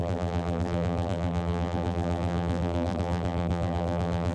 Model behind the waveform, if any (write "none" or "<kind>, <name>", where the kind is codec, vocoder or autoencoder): vocoder, BigVGAN v2